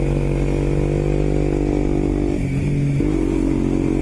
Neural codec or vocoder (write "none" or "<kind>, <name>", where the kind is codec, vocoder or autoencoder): none